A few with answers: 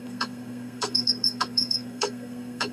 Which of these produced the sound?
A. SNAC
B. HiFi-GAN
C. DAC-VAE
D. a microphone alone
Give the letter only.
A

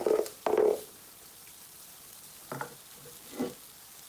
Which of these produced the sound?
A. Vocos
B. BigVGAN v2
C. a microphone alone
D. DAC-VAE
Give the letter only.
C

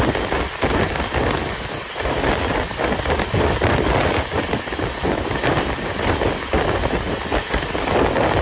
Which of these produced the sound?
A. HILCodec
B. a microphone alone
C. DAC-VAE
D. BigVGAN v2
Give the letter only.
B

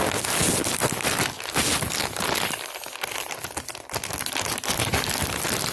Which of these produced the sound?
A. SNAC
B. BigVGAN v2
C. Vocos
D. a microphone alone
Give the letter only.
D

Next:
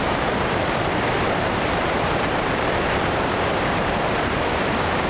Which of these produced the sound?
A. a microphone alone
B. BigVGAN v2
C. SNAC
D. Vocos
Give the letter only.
B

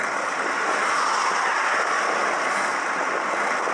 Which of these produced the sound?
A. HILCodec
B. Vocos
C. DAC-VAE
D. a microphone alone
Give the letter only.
D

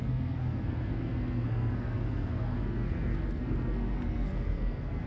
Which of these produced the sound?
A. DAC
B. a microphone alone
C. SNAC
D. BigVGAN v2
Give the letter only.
C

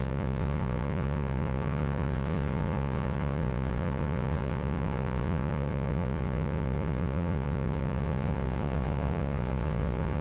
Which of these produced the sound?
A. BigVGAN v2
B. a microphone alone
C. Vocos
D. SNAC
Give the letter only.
C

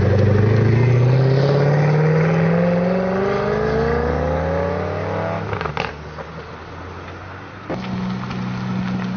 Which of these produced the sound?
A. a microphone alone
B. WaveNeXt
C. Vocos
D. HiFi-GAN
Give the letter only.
A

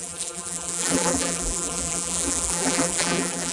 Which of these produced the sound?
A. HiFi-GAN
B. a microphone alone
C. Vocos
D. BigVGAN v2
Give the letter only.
D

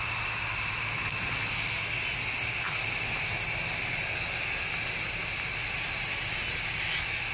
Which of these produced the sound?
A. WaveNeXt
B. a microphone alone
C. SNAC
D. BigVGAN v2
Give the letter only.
B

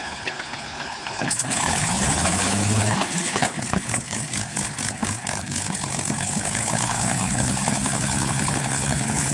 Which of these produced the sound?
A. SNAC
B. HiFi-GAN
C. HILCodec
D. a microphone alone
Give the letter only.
C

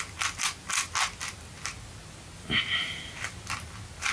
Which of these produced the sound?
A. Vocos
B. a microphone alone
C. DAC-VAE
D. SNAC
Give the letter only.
B